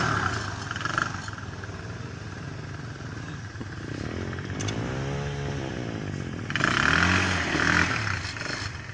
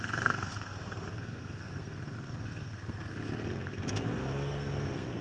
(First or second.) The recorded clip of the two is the first